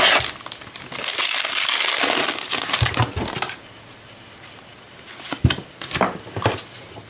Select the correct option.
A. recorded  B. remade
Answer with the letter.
A